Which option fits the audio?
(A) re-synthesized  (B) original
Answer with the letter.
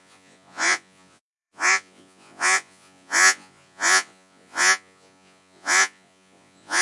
A